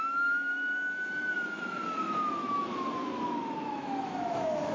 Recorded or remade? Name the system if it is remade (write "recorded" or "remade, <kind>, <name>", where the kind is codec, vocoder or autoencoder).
remade, autoencoder, DAC-VAE